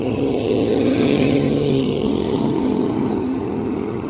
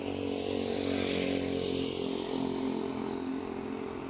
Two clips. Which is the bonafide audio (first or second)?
second